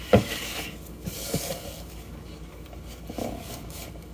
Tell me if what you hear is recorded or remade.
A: remade